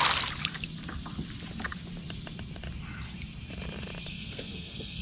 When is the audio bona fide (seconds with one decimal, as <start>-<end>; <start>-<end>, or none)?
0.0-4.1